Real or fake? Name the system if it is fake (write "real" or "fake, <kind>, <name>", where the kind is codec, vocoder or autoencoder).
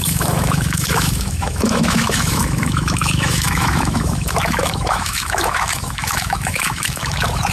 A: fake, autoencoder, DAC-VAE